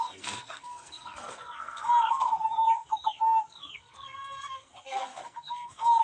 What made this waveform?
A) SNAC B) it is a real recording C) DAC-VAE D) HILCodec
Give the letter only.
A